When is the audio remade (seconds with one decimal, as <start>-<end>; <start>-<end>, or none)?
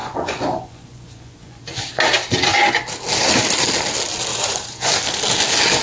0.0-1.6; 4.3-4.9